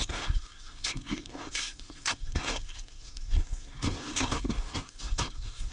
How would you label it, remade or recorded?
remade